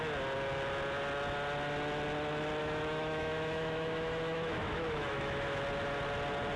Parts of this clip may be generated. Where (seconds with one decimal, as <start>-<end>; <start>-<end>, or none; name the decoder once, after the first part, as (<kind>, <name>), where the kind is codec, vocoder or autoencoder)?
2.6-5.6 (autoencoder, DAC-VAE)